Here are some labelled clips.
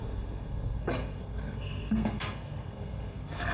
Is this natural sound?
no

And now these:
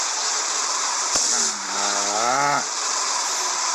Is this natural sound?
yes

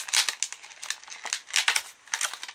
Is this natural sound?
yes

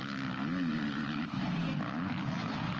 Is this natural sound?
yes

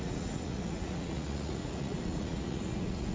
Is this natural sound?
no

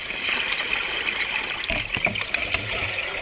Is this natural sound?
yes